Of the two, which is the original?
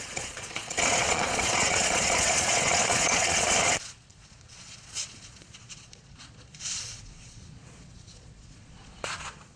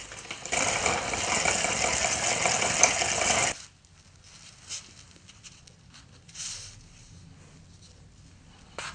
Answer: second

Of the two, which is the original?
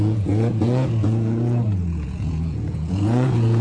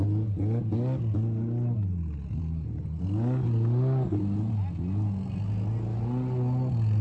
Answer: second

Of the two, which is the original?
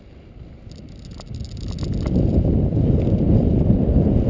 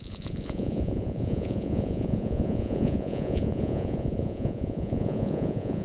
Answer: first